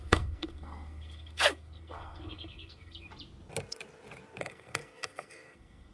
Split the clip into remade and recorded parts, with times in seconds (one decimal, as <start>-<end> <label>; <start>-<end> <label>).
0.0-3.1 remade; 3.1-4.4 recorded; 4.4-5.9 remade